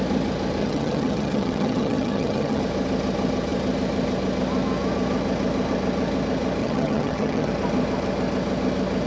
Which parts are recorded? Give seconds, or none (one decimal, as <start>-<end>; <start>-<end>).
0.0-0.6; 2.6-6.6; 7.5-9.1